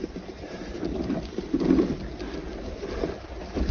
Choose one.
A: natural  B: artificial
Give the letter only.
A